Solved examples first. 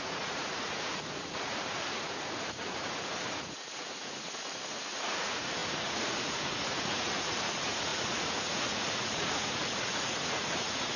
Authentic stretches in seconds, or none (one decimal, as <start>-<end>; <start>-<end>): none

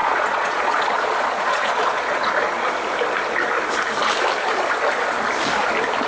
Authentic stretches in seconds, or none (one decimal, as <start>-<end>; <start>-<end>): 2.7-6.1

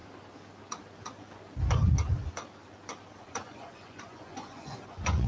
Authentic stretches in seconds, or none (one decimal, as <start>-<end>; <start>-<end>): 0.0-3.2